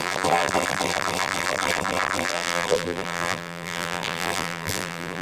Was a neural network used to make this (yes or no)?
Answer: yes